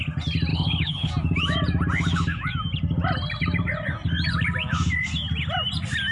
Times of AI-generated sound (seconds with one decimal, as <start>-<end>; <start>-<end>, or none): 0.5-1.1